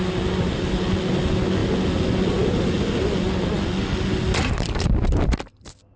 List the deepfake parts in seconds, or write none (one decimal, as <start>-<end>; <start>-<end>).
none